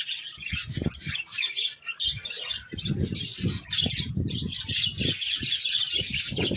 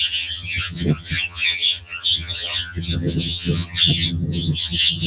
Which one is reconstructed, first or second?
second